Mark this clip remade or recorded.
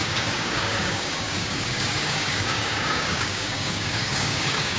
remade